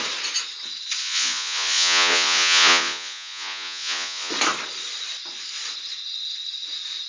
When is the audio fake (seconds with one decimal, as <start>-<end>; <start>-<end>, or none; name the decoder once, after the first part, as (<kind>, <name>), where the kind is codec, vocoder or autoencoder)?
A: 1.0-4.3 (vocoder, Vocos)